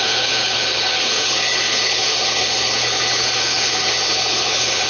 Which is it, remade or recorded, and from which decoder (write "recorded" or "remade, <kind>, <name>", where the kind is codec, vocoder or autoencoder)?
remade, codec, HILCodec